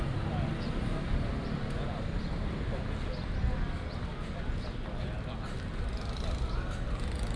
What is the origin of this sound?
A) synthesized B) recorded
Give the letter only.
B